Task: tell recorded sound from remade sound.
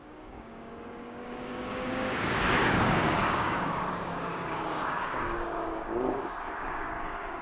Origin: remade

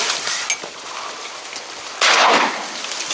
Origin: recorded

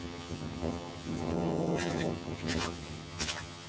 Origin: remade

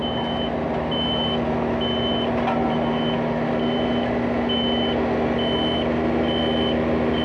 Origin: recorded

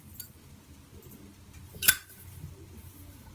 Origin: recorded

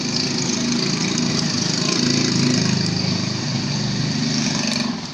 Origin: recorded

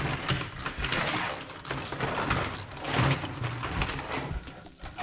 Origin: recorded